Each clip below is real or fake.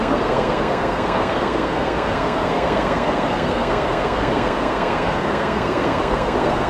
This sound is fake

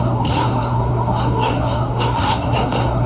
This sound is fake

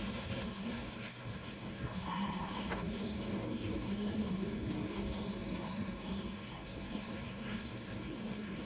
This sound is fake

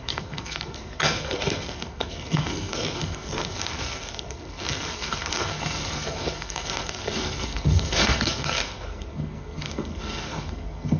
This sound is fake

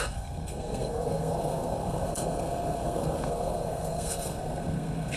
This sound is fake